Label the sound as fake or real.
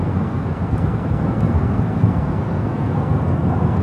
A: fake